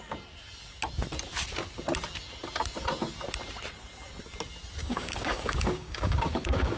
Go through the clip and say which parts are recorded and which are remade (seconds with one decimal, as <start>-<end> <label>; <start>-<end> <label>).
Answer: 0.0-4.8 recorded; 4.8-6.8 remade